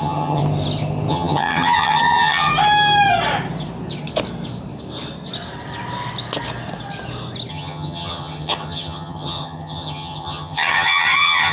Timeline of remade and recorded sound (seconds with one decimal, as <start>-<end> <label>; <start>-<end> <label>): 0.0-0.4 remade; 0.4-1.1 recorded; 1.1-2.5 remade; 2.5-7.5 recorded; 7.5-11.5 remade